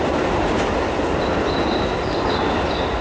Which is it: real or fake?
real